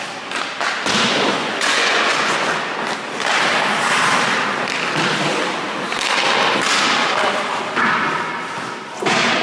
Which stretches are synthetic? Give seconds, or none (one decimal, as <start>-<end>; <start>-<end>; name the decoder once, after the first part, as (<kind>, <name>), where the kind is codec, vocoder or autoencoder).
1.4-2.5 (vocoder, Vocos)